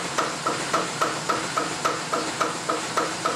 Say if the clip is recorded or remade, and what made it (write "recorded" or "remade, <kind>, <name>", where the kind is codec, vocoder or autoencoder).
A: remade, vocoder, BigVGAN v2